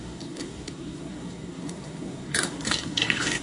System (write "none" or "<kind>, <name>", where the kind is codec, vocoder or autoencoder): codec, SNAC